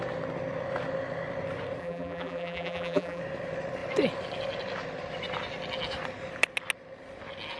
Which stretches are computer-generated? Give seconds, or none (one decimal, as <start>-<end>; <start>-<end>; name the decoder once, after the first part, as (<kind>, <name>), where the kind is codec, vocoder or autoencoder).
1.8-3.2 (vocoder, BigVGAN v2)